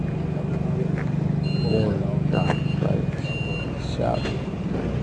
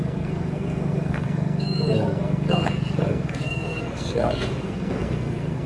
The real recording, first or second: first